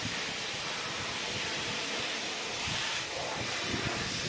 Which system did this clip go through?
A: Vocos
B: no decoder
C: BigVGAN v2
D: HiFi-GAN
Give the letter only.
C